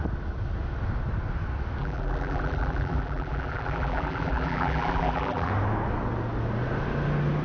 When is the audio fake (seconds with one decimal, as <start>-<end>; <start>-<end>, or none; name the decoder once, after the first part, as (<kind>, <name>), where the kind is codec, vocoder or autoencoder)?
1.8-5.5 (vocoder, BigVGAN v2)